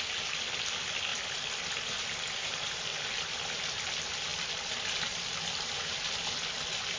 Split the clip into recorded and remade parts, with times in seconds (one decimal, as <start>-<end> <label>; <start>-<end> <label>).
0.0-1.1 recorded; 1.1-2.1 remade; 2.1-2.9 recorded; 2.9-3.8 remade; 3.8-4.3 recorded; 4.3-7.0 remade